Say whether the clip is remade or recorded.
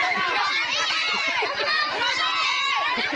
remade